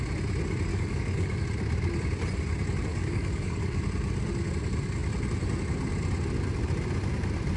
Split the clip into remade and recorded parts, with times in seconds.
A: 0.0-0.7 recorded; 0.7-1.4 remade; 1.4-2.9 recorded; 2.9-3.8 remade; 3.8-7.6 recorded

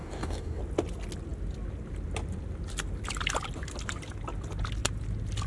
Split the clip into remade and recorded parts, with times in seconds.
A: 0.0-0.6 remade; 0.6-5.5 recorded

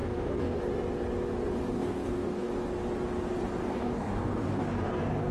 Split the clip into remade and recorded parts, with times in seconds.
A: 0.0-0.6 remade; 0.6-1.7 recorded; 1.7-2.5 remade; 2.5-3.6 recorded; 3.6-5.3 remade

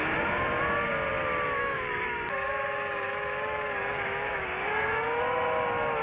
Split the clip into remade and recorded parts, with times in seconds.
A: 0.0-1.6 recorded; 1.6-5.2 remade; 5.2-6.0 recorded

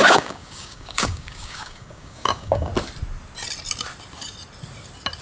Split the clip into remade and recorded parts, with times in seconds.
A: 0.0-2.7 remade; 2.7-5.2 recorded

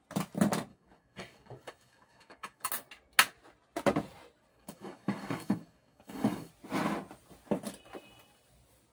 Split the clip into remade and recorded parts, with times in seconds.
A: 0.0-0.7 recorded; 0.7-2.7 remade; 2.7-4.5 recorded; 4.5-6.5 remade; 6.5-8.9 recorded